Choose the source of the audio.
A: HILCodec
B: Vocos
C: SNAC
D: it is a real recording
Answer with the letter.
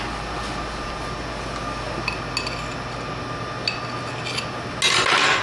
D